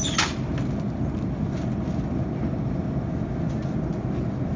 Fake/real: real